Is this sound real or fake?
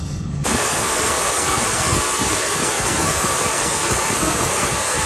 fake